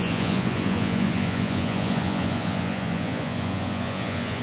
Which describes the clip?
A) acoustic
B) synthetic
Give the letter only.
B